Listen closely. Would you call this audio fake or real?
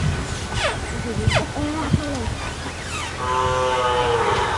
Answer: real